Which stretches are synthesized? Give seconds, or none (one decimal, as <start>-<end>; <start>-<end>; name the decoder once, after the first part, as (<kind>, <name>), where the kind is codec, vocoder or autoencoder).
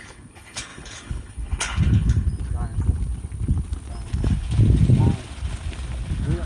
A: 0.0-2.3 (codec, HILCodec)